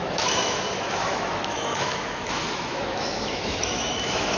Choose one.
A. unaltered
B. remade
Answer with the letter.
B